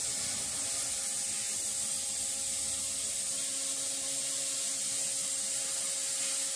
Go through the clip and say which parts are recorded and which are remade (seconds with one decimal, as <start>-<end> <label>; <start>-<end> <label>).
0.0-6.6 recorded